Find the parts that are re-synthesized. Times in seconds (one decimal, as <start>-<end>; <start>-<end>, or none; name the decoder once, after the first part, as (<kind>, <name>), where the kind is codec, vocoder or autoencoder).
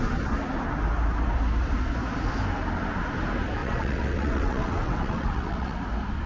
3.6-5.8 (vocoder, WaveNeXt)